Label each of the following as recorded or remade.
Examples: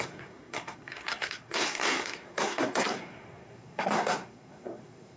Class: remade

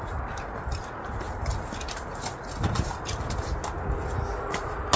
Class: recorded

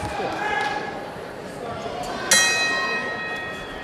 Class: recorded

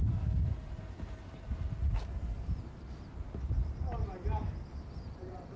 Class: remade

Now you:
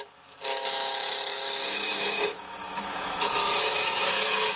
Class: remade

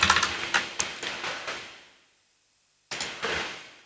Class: recorded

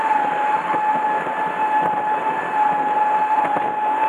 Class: recorded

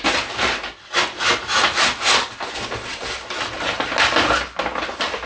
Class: recorded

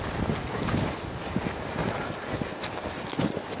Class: recorded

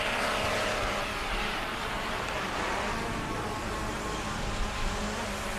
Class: recorded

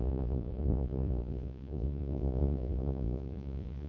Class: remade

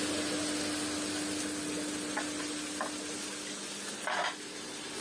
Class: recorded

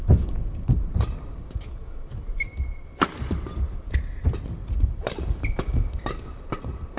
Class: remade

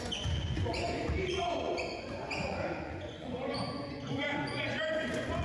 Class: remade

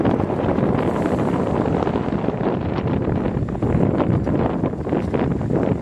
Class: recorded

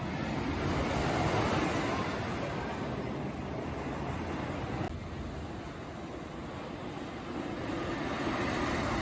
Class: recorded